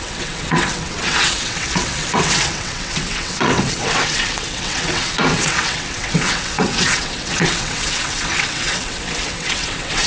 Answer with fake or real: fake